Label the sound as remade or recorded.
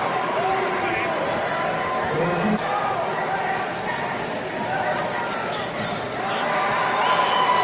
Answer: recorded